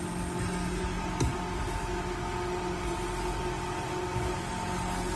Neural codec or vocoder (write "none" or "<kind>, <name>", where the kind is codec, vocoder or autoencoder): none